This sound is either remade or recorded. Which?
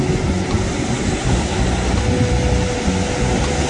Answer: recorded